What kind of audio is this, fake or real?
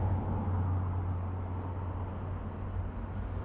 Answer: real